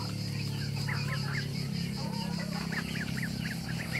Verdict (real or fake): real